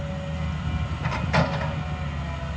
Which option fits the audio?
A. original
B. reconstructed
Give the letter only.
A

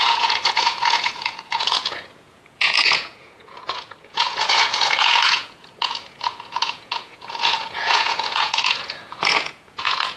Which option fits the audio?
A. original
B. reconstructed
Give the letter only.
B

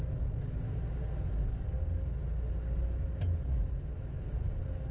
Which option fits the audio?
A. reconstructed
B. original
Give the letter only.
B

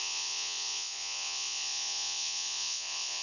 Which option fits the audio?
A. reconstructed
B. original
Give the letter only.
A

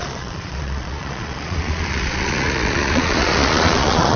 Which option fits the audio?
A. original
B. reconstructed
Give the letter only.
B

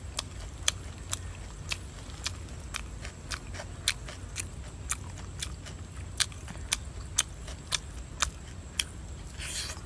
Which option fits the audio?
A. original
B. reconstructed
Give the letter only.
A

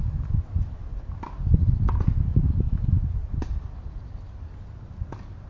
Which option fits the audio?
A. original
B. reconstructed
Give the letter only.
A